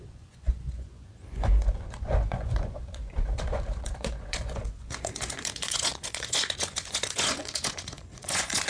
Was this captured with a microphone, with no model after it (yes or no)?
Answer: no